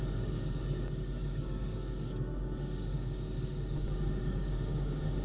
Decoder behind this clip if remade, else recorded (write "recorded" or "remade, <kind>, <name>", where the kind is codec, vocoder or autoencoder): remade, codec, DAC